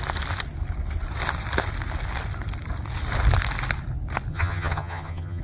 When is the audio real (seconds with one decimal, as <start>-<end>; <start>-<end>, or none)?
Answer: 0.0-4.3